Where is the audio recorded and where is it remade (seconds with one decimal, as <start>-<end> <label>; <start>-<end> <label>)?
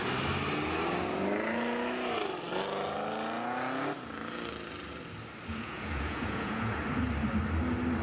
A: 0.0-5.5 recorded; 5.5-6.8 remade; 6.8-8.0 recorded